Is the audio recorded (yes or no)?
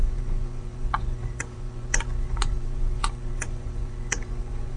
no